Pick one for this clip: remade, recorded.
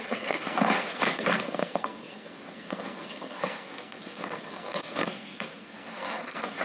remade